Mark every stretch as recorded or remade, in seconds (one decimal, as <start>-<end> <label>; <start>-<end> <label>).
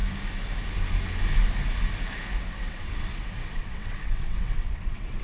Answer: 0.0-2.5 recorded; 2.5-5.2 remade